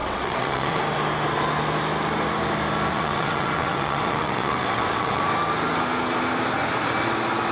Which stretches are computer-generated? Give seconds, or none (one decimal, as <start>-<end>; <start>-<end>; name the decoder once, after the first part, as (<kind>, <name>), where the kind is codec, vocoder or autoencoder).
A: 0.0-0.8 (vocoder, WaveNeXt); 2.9-5.2